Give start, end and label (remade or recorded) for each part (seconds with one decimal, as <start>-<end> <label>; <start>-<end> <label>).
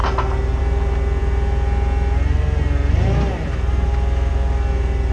0.0-5.1 recorded